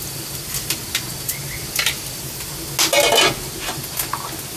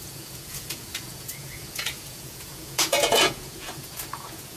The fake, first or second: second